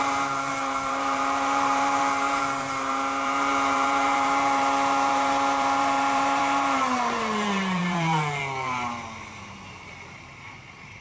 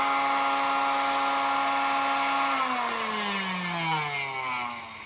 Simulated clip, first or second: first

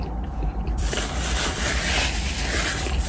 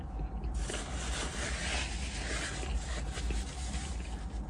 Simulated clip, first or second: first